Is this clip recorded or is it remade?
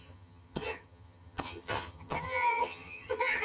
remade